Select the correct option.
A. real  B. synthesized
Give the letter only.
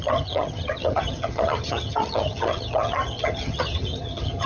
B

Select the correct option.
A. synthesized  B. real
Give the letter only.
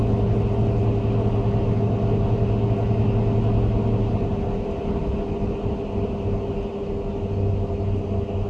B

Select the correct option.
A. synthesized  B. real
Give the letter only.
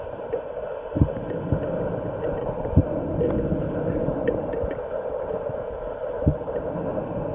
B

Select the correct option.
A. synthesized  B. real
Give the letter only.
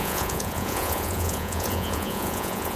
A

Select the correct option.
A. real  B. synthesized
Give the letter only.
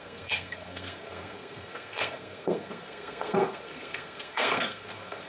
B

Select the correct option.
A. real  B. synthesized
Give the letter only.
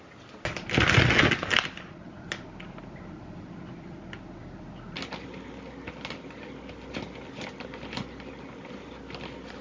A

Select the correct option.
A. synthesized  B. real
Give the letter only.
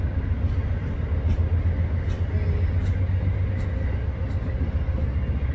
B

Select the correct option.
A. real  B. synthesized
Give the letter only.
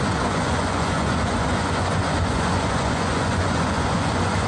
B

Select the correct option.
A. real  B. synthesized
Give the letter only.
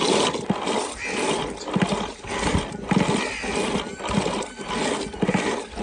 A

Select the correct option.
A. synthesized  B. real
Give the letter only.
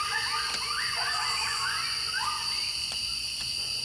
A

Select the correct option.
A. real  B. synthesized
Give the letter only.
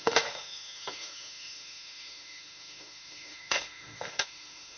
B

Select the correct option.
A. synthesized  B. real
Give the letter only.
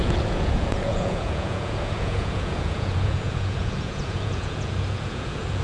A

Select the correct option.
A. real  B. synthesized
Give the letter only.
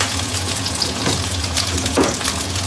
B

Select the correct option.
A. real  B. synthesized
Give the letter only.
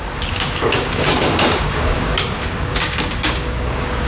B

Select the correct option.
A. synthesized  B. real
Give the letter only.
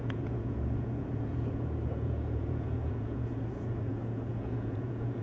A